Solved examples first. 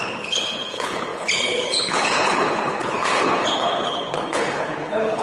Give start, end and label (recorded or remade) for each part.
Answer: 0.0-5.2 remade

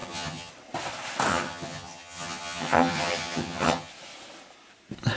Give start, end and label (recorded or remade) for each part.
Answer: 0.0-0.5 remade; 0.5-1.3 recorded; 1.3-3.9 remade; 3.9-5.2 recorded

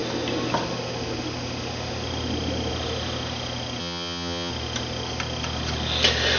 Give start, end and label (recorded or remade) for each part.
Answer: 0.0-3.8 recorded; 3.8-4.5 remade; 4.5-6.4 recorded

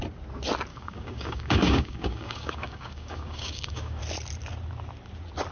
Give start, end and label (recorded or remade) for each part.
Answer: 0.0-0.7 recorded; 0.7-4.0 remade; 4.0-5.5 recorded

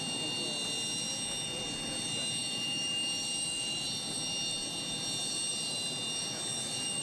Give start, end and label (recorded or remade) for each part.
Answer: 0.0-7.0 recorded

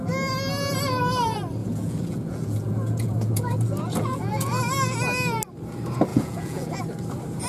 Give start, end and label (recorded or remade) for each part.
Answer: 0.0-1.6 recorded; 1.6-4.6 remade; 4.6-6.1 recorded; 6.1-6.8 remade; 6.8-7.5 recorded